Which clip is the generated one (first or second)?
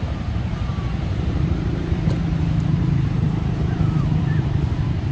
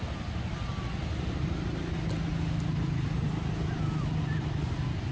first